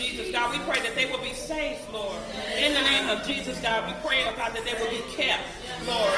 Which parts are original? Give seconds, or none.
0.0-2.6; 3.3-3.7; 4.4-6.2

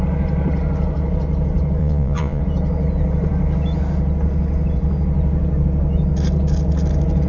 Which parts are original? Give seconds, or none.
0.0-1.8; 2.4-7.3

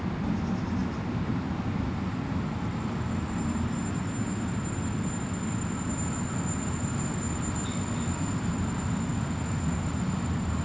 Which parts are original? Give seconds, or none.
0.0-10.6

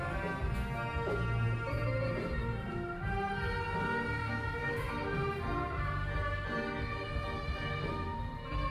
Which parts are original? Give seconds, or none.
0.0-4.2; 4.8-8.7

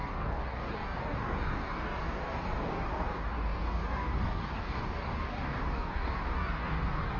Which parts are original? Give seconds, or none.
none

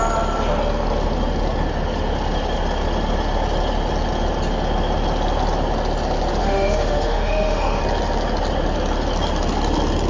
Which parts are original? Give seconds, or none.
0.0-6.4; 7.8-10.1

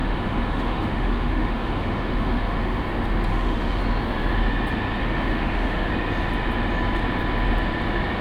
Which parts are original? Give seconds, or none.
2.8-3.3; 3.8-5.0; 5.9-8.2

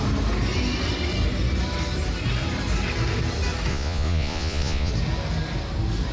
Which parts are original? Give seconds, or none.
0.0-3.7; 4.9-6.1